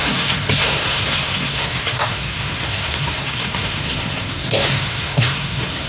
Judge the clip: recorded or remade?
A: remade